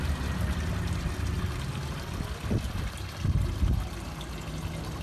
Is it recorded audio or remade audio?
recorded